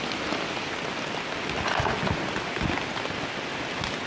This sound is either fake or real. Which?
real